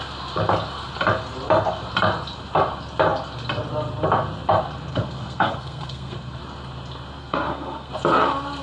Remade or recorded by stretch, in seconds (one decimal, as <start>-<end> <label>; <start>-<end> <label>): 0.0-4.9 recorded; 4.9-6.4 remade; 6.4-7.2 recorded; 7.2-7.9 remade; 7.9-8.6 recorded